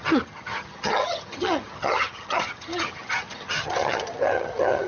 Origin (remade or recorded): remade